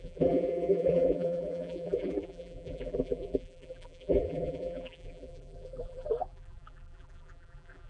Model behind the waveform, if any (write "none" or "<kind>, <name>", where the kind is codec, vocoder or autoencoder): vocoder, BigVGAN v2